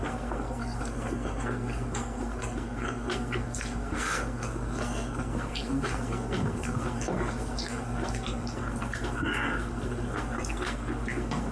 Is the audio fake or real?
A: fake